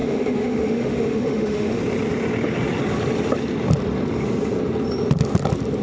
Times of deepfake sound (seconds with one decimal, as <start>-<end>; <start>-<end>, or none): 0.0-1.8